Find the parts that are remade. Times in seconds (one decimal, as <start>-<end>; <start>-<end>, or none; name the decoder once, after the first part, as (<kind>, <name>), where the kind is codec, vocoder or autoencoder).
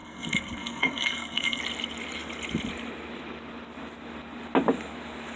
0.0-1.6 (codec, SNAC)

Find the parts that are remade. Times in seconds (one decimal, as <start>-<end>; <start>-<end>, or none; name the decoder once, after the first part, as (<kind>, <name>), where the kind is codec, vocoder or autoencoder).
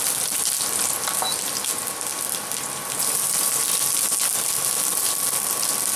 none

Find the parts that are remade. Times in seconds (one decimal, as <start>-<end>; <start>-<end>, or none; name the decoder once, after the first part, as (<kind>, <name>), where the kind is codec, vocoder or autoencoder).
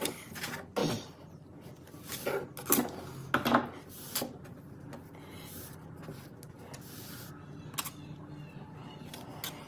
none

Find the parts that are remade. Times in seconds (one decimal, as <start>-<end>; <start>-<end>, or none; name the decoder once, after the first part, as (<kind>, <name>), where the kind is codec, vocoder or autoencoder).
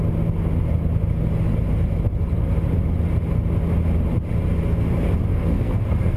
5.3-6.2 (codec, SNAC)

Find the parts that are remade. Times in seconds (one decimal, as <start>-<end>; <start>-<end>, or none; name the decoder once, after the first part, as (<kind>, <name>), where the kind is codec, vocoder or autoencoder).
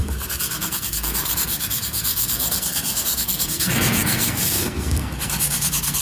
0.0-6.0 (codec, SNAC)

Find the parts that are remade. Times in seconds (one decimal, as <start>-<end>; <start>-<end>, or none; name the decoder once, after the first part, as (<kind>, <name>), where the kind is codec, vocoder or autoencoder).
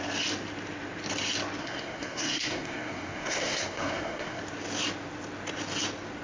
1.6-4.4 (codec, SNAC)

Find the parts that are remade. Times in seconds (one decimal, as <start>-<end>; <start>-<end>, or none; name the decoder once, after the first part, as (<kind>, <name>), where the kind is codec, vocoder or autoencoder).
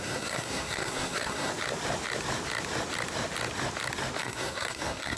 0.0-1.5 (codec, SNAC); 4.2-5.2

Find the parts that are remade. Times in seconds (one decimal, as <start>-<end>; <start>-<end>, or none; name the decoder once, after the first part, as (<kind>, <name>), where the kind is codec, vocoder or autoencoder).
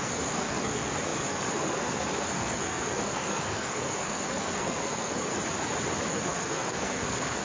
0.0-5.3 (codec, SNAC); 6.1-7.4